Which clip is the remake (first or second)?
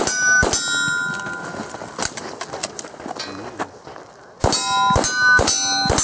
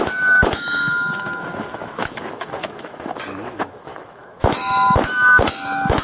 second